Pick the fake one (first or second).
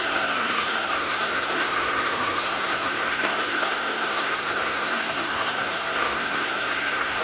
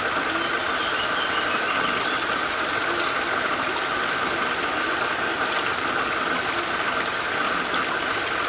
first